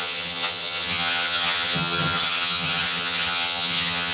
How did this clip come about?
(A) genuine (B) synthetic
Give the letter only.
B